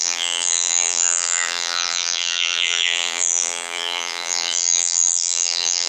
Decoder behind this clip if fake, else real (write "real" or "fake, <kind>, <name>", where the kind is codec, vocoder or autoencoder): fake, vocoder, BigVGAN v2